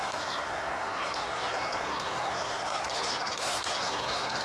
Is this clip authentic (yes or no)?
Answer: no